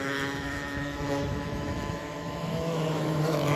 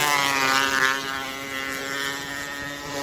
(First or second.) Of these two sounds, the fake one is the first